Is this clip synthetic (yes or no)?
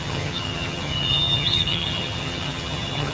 yes